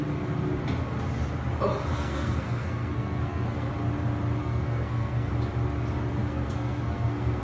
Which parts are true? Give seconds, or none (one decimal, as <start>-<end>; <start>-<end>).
0.0-1.9; 3.7-4.4; 5.3-6.2